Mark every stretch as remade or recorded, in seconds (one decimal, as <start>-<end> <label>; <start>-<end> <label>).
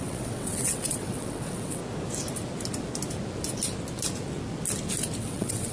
0.0-1.8 remade; 1.8-5.2 recorded; 5.2-5.7 remade